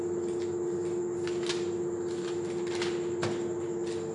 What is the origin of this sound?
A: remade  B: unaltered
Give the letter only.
B